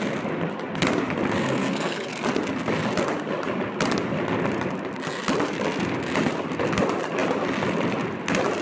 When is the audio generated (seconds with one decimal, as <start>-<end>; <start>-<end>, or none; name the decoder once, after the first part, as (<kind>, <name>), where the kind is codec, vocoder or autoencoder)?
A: 1.4-2.2 (codec, SNAC)